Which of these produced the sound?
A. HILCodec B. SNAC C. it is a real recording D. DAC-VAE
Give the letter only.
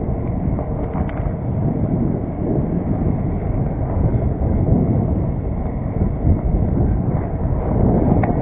C